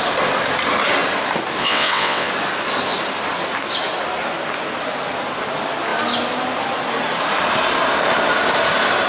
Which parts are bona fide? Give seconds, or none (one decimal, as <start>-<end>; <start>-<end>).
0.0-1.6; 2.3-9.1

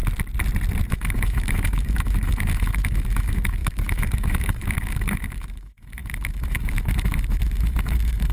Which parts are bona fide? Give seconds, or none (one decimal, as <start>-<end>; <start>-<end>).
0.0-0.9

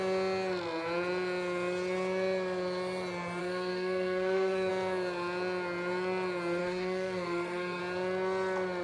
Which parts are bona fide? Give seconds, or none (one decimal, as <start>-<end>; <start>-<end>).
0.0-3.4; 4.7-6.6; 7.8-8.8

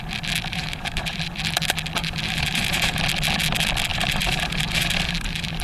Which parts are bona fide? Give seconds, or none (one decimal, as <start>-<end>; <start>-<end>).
0.0-0.5; 1.3-2.0; 3.0-3.9

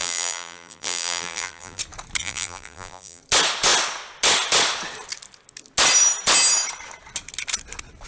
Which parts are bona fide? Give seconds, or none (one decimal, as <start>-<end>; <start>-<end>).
1.8-2.2; 3.2-8.1